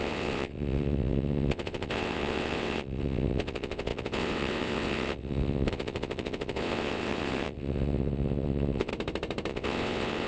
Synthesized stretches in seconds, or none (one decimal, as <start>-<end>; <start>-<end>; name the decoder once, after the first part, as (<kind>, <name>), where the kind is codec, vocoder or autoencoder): 0.0-8.9 (vocoder, WaveNeXt); 9.5-10.3